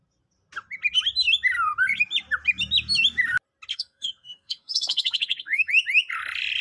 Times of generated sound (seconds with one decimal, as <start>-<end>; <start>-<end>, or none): 3.7-5.7